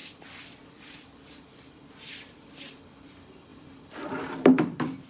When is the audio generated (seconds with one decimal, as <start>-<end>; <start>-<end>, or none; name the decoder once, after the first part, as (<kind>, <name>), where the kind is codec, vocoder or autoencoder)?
0.0-2.5 (vocoder, BigVGAN v2); 3.5-4.5